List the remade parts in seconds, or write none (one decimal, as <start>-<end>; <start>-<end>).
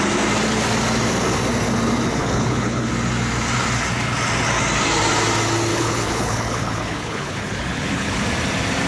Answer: 2.2-2.9; 5.7-8.2